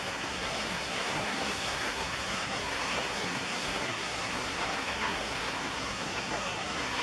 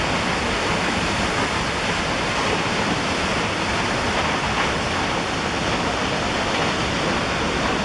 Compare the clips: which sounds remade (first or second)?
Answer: first